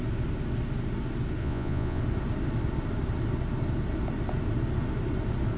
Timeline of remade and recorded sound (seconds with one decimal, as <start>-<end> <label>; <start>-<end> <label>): 0.0-1.4 recorded; 1.4-2.0 remade; 2.0-5.6 recorded